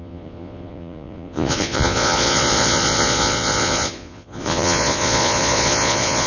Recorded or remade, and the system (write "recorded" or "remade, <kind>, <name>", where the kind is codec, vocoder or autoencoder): remade, vocoder, Vocos